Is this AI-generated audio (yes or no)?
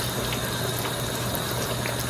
no